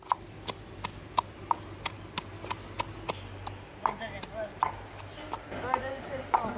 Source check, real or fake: real